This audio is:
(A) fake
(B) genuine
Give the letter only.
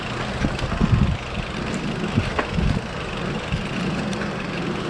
B